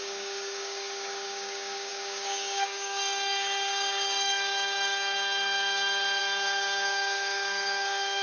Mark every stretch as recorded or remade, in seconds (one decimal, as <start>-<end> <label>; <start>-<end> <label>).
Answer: 0.0-8.2 remade